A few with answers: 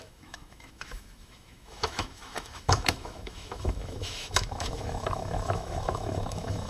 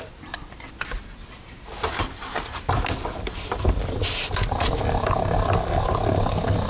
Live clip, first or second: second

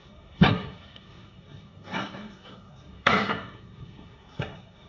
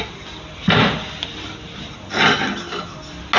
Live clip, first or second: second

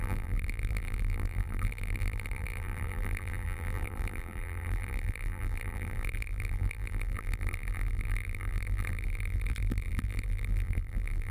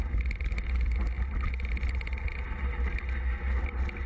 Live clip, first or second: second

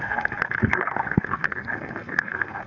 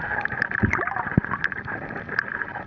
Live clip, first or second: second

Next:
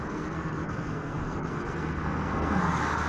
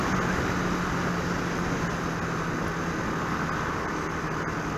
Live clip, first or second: second